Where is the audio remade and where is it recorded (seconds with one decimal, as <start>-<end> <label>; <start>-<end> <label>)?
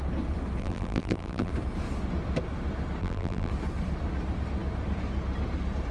0.0-0.6 recorded; 0.6-1.5 remade; 1.5-3.0 recorded; 3.0-3.5 remade; 3.5-5.9 recorded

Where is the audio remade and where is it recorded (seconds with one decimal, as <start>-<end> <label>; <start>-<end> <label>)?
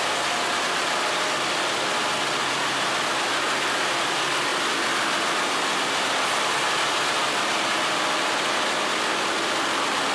0.0-10.1 recorded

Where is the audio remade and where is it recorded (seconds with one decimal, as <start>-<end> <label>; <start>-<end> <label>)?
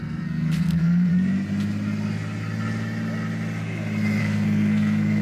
0.0-1.1 remade; 1.1-4.2 recorded; 4.2-5.2 remade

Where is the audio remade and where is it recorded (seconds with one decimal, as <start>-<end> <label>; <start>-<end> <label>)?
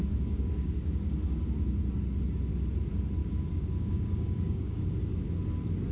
0.0-1.1 remade; 1.1-3.2 recorded; 3.2-5.0 remade; 5.0-5.9 recorded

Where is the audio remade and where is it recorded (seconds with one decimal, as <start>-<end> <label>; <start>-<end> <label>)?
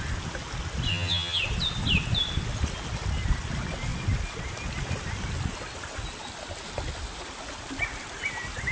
0.0-0.9 recorded; 0.9-1.4 remade; 1.4-8.7 recorded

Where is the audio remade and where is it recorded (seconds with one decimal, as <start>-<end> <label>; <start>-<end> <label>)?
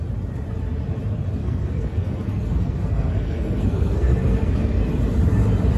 0.0-1.4 recorded; 1.4-4.9 remade; 4.9-5.8 recorded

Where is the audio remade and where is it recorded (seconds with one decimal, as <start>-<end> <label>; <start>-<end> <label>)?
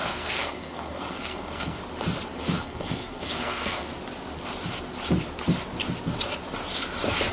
0.0-1.8 remade; 1.8-2.4 recorded; 2.4-3.9 remade; 3.9-7.3 recorded